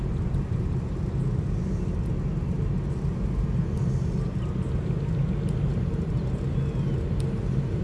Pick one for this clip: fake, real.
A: real